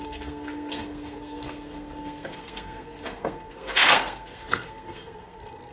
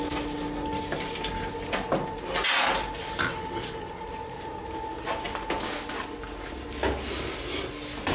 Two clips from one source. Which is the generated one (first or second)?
first